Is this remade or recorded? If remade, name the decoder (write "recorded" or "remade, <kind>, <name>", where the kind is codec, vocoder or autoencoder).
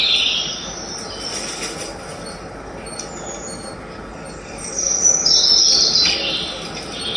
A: recorded